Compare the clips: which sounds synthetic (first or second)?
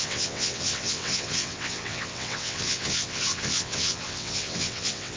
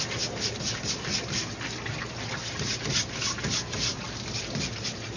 first